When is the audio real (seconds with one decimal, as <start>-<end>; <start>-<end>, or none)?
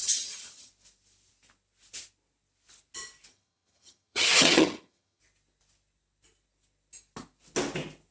0.7-3.3; 5.2-8.1